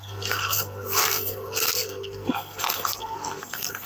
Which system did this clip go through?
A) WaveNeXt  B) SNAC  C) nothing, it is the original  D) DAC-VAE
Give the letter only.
B